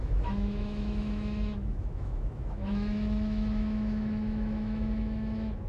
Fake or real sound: fake